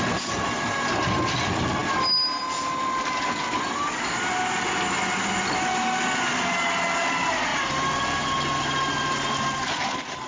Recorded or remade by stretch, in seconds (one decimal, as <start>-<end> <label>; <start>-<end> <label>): 0.0-10.3 recorded